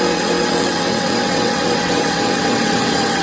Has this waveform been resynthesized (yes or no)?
yes